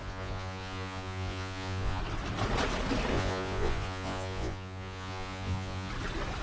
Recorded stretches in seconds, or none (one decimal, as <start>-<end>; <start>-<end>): 2.0-3.1; 5.9-6.4